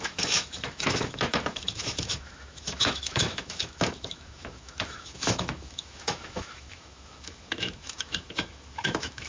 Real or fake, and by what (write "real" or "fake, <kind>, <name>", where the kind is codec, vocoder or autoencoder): fake, autoencoder, DAC-VAE